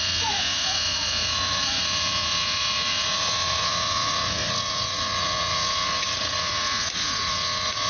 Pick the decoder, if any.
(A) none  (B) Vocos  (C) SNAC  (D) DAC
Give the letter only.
B